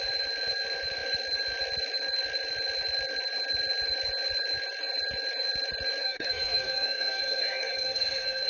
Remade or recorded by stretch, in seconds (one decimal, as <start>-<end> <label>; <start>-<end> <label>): 0.0-6.0 recorded; 6.0-8.5 remade